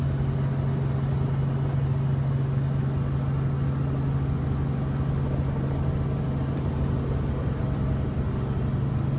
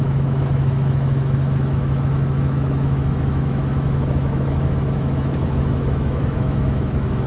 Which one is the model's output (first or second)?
second